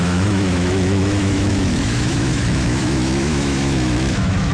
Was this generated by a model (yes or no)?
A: yes